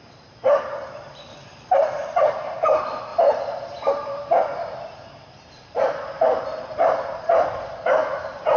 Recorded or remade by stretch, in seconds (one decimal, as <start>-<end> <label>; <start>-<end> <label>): 0.0-1.3 remade; 1.3-1.8 recorded; 1.8-3.1 remade; 3.1-3.9 recorded; 3.9-8.6 remade